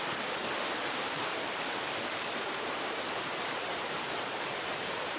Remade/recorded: remade